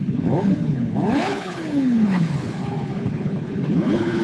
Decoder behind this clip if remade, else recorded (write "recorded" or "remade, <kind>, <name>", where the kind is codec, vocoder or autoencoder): remade, codec, HILCodec